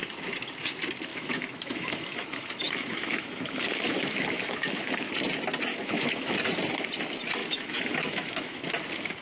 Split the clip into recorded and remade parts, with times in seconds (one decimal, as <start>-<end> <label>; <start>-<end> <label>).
0.0-1.1 recorded; 1.1-5.1 remade; 5.1-5.7 recorded; 5.7-6.3 remade; 6.3-7.4 recorded; 7.4-8.6 remade; 8.6-9.2 recorded